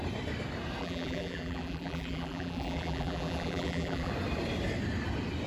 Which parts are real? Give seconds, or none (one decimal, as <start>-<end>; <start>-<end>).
0.0-0.8; 4.1-5.5